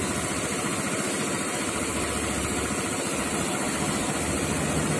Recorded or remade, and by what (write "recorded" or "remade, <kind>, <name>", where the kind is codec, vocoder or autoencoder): recorded